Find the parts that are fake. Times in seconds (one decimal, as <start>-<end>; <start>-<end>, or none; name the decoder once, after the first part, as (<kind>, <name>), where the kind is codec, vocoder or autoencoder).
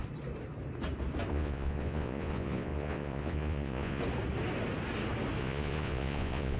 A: 1.3-4.0 (vocoder, Vocos); 5.4-6.6